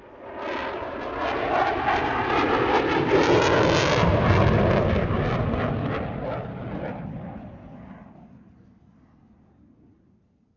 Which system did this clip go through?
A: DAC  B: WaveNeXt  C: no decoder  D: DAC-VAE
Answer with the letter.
C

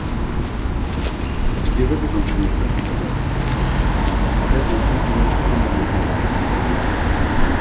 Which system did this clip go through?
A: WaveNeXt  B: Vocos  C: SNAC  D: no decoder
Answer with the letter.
D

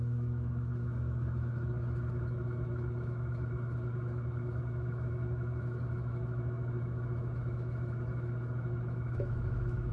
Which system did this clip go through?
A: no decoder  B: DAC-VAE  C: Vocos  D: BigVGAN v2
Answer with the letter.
B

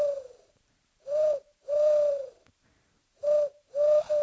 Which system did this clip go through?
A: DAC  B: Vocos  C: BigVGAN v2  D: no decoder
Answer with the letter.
C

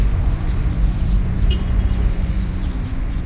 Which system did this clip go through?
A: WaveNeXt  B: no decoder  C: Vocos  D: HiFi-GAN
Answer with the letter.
C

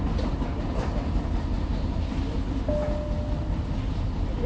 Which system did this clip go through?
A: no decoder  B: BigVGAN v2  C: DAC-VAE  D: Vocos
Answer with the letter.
A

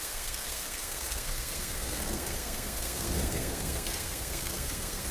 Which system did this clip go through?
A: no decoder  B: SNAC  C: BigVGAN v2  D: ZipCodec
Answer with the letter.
B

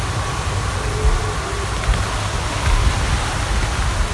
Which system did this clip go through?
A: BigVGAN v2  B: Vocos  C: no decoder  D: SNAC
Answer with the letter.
C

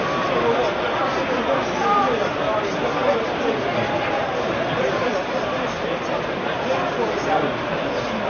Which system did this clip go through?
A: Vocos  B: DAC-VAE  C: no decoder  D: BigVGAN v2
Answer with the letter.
D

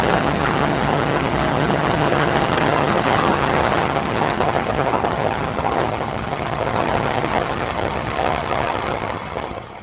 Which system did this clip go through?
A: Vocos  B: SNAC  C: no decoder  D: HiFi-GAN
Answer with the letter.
D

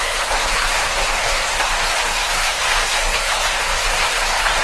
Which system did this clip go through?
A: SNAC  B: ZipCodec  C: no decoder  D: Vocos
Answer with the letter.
A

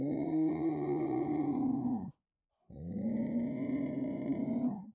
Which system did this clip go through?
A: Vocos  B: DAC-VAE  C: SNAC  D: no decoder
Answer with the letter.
A